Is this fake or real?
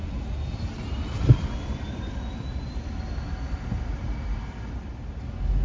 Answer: real